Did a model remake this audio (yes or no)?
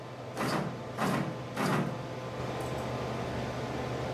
no